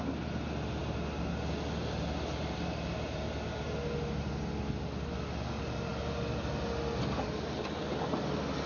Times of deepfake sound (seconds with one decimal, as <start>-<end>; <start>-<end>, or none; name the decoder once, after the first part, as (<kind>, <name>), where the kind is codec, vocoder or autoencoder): none